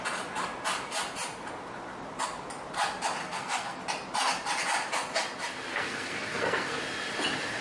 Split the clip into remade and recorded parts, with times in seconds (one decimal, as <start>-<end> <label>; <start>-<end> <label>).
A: 0.0-3.2 recorded; 3.2-3.8 remade; 3.8-5.7 recorded; 5.7-6.8 remade; 6.8-7.6 recorded